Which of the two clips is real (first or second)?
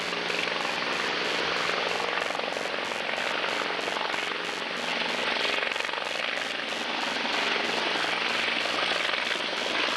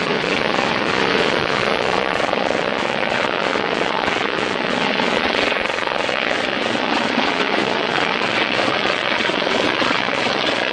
first